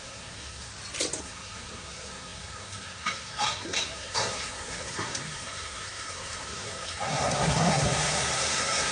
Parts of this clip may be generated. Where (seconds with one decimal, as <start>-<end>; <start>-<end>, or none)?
0.0-0.7; 1.2-8.9

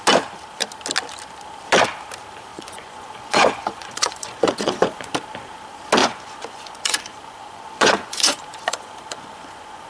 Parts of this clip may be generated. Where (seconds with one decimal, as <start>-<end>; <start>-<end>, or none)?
2.5-5.1; 6.0-9.9